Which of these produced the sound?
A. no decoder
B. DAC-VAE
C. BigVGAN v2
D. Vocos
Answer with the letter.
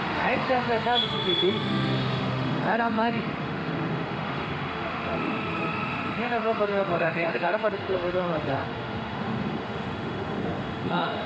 B